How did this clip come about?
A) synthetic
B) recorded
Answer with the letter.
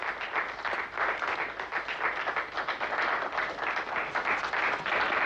B